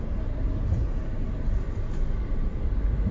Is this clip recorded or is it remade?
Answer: recorded